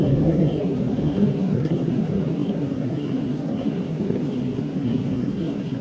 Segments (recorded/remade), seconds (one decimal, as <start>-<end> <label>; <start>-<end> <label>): 0.0-5.8 remade